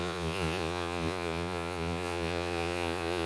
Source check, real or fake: fake